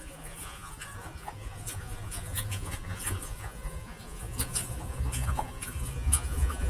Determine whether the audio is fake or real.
fake